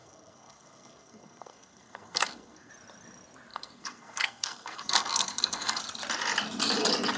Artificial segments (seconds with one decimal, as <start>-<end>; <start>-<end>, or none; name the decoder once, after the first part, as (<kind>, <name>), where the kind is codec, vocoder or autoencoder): 0.0-2.7 (codec, SNAC); 3.5-5.8

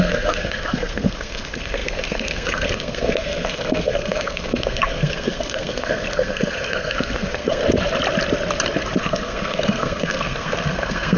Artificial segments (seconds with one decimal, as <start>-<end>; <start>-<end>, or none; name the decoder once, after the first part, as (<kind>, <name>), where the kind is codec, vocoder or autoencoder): 0.0-7.6 (codec, SNAC); 9.0-11.2

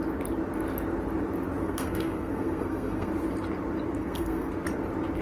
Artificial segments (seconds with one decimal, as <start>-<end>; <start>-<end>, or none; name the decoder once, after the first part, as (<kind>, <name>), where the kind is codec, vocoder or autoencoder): 1.6-3.1 (codec, SNAC); 4.0-4.5

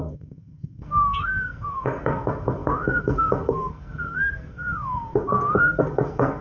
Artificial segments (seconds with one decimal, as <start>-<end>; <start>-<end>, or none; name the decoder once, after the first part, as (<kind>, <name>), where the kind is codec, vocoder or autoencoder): 0.0-6.4 (codec, SNAC)